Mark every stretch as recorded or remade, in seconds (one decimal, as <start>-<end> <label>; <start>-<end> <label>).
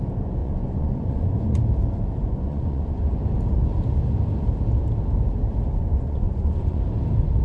0.0-0.4 recorded; 0.4-1.6 remade; 1.6-2.2 recorded; 2.2-3.1 remade; 3.1-5.8 recorded; 5.8-6.8 remade; 6.8-7.4 recorded